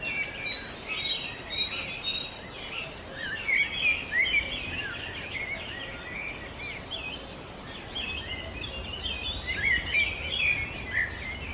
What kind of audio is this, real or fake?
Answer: real